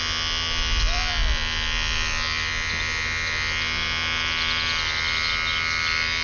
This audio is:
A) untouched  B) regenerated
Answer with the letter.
A